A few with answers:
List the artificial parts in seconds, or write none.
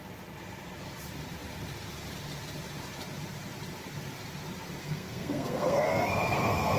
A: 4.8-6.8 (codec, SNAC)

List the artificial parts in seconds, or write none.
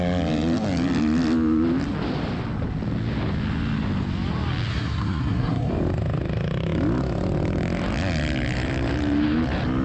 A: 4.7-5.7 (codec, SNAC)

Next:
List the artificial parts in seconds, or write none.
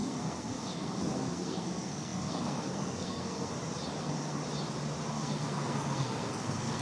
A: 0.0-3.5 (codec, SNAC); 4.0-4.4; 5.1-6.8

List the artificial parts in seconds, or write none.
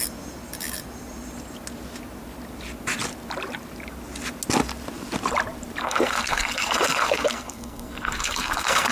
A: 5.8-8.9 (codec, SNAC)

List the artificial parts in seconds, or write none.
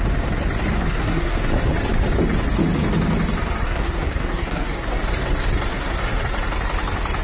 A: 0.7-1.5 (codec, SNAC); 3.6-5.0; 5.7-6.2